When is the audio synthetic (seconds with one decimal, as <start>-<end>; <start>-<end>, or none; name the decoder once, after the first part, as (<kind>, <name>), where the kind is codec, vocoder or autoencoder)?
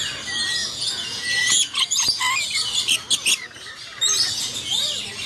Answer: 0.6-2.2 (vocoder, Vocos)